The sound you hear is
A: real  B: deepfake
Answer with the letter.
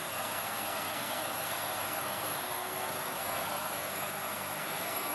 B